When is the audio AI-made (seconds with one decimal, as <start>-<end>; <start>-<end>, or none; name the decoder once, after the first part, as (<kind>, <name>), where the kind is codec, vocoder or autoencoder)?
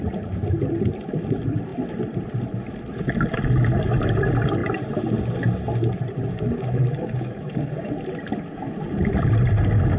6.3-7.9 (codec, DAC)